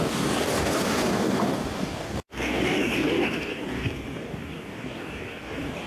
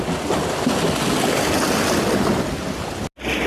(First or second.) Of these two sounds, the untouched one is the second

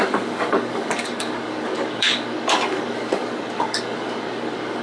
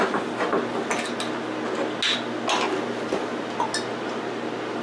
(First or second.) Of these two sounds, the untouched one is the second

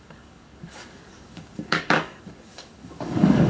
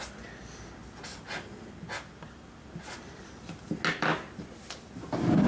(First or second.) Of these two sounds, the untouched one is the second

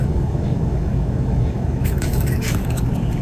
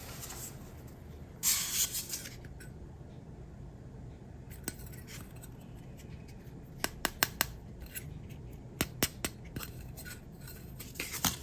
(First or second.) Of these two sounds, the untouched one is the second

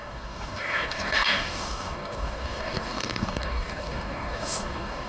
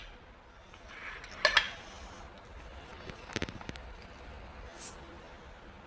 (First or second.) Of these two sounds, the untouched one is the second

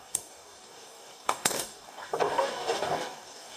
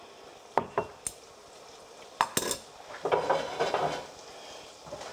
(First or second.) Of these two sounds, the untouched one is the second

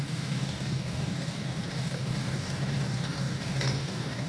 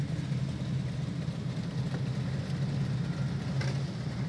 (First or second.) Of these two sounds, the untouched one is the second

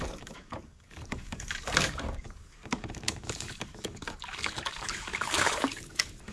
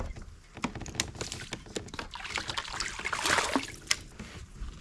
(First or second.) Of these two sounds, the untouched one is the second